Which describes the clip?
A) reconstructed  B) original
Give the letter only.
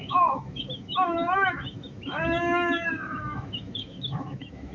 A